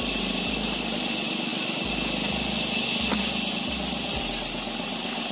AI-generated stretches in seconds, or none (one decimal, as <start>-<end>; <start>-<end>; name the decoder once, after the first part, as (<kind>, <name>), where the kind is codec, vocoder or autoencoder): none